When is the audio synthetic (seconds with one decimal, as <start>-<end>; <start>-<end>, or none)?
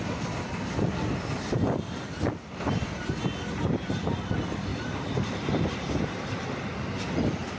4.7-6.7